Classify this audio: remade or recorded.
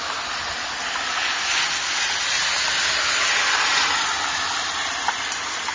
recorded